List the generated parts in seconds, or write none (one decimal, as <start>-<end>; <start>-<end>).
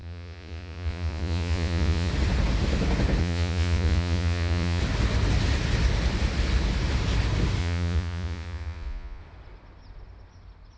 0.0-2.1; 3.2-4.8; 7.6-9.2